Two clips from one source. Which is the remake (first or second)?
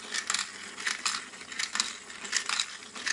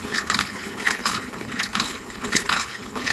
second